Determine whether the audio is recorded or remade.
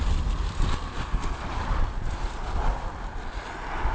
recorded